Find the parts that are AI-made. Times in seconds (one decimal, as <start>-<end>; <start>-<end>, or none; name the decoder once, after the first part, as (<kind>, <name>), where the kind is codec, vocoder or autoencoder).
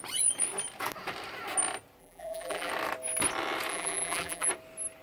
2.0-2.7 (vocoder, BigVGAN v2); 3.7-4.5